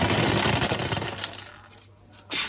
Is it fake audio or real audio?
real